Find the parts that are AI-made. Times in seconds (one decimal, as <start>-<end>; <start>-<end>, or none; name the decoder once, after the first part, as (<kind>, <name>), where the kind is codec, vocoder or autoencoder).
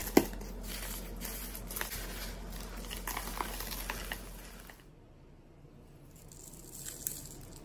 none